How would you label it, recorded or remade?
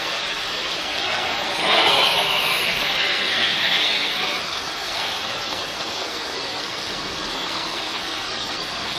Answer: remade